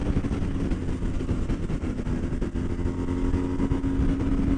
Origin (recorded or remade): recorded